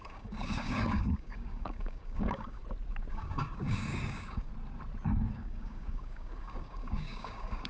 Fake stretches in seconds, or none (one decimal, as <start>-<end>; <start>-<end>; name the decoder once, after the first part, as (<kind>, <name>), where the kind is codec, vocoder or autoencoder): 0.0-2.6 (codec, DAC); 3.1-4.5; 5.3-7.7